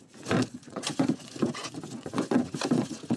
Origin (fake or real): fake